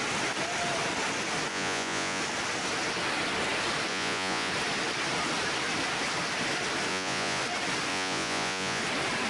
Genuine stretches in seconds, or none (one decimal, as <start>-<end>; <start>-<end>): 0.0-1.5; 2.2-3.9; 4.5-6.9; 7.4-7.9; 8.8-9.3